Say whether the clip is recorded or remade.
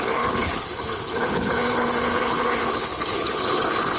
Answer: remade